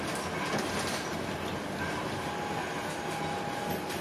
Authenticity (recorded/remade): recorded